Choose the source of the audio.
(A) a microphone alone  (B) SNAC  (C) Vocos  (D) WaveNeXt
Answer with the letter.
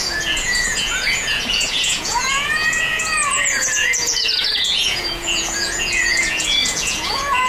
C